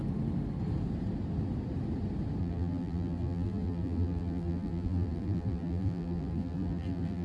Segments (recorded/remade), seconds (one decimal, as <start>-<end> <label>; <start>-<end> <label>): 0.0-2.4 recorded; 2.4-7.2 remade